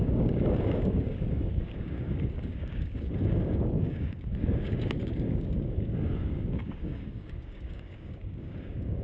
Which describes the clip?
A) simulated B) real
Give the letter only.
A